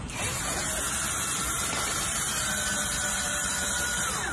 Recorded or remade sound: remade